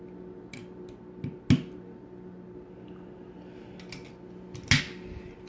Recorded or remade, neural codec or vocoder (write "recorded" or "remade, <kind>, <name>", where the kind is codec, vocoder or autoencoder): recorded